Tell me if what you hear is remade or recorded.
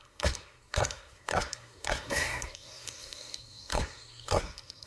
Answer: remade